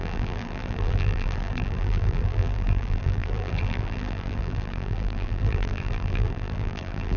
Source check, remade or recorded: remade